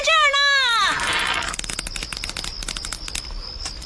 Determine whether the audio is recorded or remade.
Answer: recorded